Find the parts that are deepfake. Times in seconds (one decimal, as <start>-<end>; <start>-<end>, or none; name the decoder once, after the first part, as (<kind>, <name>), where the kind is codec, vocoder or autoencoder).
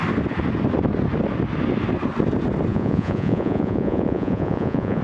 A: 2.7-5.0 (vocoder, Vocos)